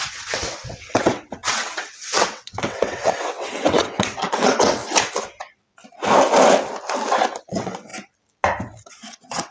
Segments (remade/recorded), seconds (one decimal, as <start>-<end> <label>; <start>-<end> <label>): 0.0-4.8 remade; 4.8-7.4 recorded; 7.4-7.9 remade; 7.9-8.9 recorded; 8.9-9.5 remade